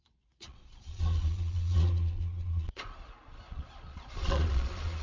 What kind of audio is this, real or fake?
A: fake